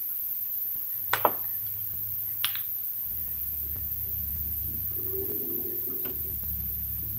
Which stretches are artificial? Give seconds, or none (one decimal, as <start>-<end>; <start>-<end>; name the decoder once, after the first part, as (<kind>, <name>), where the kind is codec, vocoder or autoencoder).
none